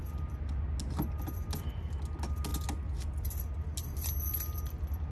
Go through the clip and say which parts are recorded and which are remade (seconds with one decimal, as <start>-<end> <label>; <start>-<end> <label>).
0.0-5.1 recorded